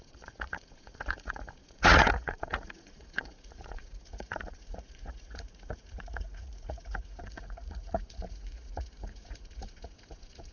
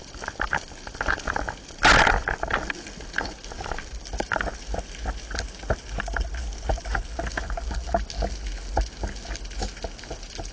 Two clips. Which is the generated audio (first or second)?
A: first